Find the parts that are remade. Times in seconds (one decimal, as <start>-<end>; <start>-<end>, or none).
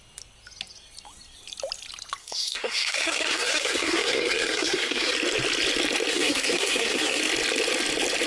2.2-5.1; 6.1-7.2